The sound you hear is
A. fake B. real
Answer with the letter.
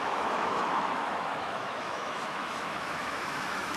A